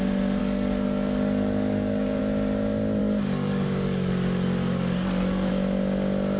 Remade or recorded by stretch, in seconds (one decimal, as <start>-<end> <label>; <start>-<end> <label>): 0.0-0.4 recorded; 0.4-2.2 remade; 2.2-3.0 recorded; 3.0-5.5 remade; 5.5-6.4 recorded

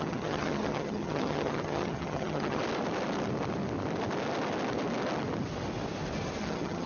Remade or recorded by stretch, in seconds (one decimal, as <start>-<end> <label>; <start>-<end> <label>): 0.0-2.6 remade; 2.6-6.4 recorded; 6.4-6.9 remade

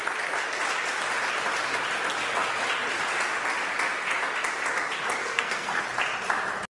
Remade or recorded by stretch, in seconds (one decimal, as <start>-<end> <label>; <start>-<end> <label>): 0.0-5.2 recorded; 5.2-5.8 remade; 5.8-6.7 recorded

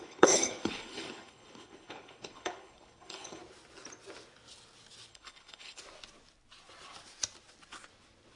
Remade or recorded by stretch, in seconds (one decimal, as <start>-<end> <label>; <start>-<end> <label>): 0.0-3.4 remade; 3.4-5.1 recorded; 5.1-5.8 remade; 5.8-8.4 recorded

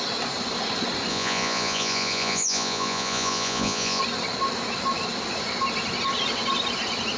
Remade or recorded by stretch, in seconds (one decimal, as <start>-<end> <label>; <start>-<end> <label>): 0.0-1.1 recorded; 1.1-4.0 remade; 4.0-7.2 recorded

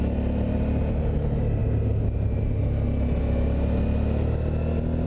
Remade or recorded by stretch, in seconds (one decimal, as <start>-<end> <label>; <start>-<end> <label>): 0.0-5.1 recorded

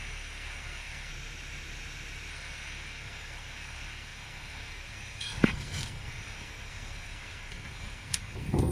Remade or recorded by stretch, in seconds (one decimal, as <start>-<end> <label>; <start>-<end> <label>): 0.0-1.1 remade; 1.1-2.3 recorded; 2.3-8.7 remade

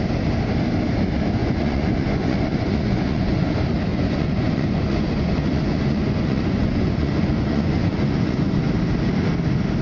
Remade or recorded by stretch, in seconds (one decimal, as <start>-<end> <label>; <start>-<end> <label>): 0.0-1.4 recorded; 1.4-3.5 remade; 3.5-3.9 recorded; 3.9-8.7 remade; 8.7-9.8 recorded